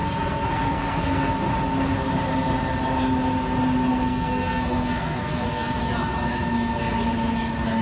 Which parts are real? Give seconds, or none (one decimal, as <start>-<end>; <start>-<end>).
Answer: 1.3-3.9; 5.8-7.8